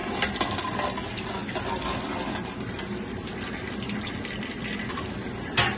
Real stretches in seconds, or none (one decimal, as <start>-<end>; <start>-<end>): 0.0-5.8